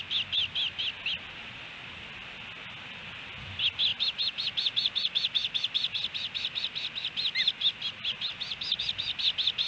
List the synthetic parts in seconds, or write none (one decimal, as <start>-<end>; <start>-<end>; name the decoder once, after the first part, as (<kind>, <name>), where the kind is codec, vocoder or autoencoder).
none